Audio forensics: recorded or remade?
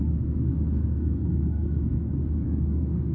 remade